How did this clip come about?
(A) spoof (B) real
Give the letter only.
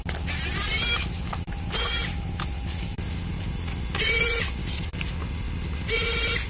B